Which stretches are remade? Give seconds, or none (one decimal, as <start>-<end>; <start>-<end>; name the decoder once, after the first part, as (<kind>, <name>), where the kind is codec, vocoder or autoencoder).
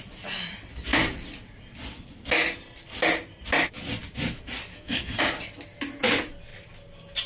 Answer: 4.7-5.2 (codec, SNAC)